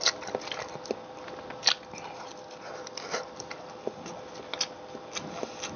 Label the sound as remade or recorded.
recorded